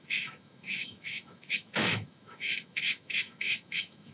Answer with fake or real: fake